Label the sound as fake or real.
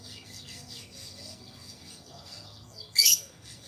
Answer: fake